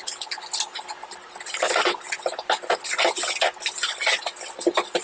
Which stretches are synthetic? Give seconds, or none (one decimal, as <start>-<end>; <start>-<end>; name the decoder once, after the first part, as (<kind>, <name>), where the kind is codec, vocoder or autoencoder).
none